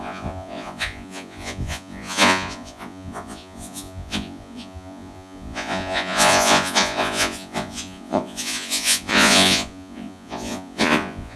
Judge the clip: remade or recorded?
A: remade